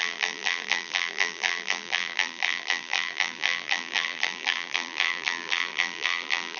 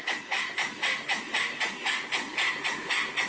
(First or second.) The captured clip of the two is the second